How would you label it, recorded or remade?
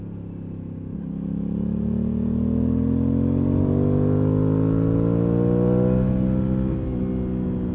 recorded